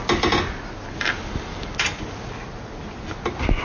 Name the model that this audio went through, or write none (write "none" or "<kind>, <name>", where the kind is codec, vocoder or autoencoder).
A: none